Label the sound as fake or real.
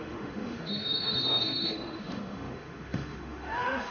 fake